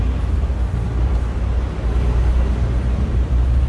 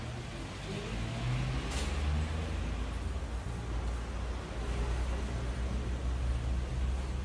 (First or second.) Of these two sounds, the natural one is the second